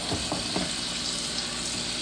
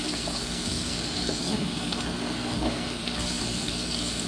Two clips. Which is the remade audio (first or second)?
second